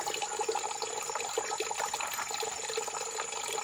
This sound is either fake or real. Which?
real